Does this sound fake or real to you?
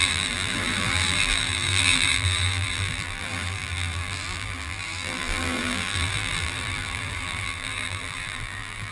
fake